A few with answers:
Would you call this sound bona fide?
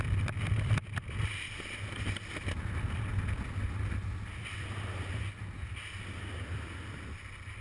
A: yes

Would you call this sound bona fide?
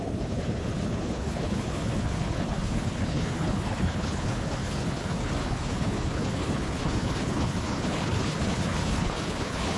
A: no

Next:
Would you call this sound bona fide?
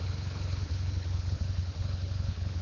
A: no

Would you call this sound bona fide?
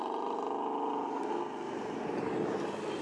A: yes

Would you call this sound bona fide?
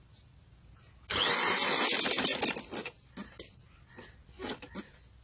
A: yes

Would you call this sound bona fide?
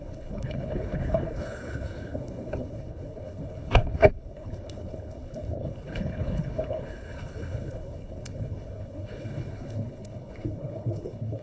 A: no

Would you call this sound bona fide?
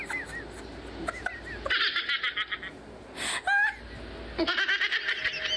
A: yes